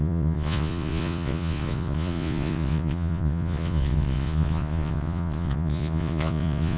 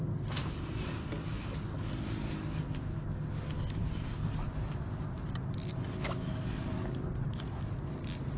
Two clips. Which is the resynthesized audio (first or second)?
first